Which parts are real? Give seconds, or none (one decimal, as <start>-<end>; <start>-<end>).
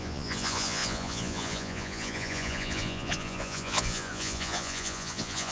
none